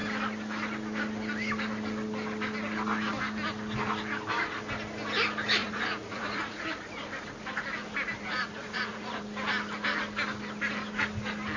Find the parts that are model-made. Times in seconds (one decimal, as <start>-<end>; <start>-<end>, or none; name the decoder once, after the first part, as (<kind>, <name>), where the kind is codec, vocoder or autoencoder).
5.6-6.6 (vocoder, Vocos); 8.4-9.2